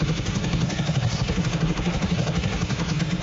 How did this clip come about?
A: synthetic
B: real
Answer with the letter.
A